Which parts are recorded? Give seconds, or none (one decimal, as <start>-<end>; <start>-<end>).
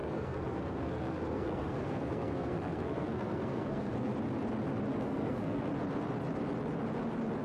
4.1-5.0; 5.7-7.4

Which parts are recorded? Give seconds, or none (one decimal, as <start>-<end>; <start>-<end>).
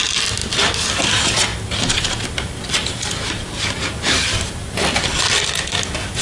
0.0-6.2